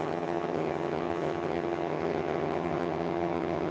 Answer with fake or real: fake